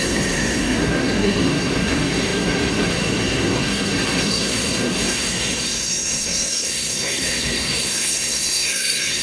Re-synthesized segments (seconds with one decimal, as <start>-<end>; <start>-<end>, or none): 0.0-9.2